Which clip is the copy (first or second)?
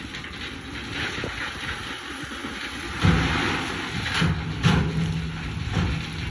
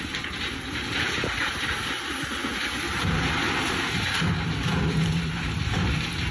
second